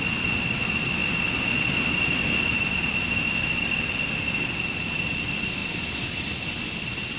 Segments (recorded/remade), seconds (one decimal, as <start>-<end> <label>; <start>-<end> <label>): 0.0-7.2 recorded